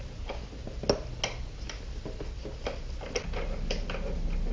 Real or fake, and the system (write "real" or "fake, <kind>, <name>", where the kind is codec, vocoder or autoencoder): real